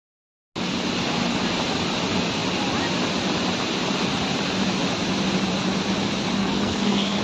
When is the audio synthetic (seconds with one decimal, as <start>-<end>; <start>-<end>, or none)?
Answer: 6.4-7.2